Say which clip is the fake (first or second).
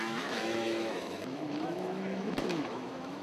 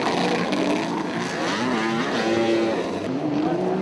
first